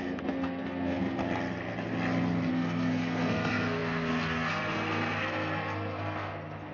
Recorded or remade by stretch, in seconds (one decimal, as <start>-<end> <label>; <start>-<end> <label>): 0.0-1.2 remade; 1.2-2.5 recorded; 2.5-6.7 remade

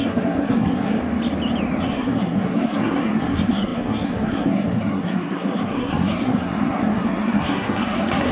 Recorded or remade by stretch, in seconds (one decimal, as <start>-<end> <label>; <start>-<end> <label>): 0.0-1.0 remade; 1.0-1.8 recorded; 1.8-8.3 remade

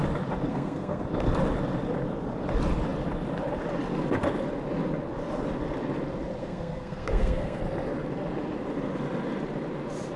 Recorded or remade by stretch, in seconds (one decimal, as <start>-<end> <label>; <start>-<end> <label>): 0.0-0.5 recorded; 0.5-1.0 remade; 1.0-6.4 recorded; 6.4-7.6 remade; 7.6-10.2 recorded